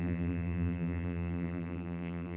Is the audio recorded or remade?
remade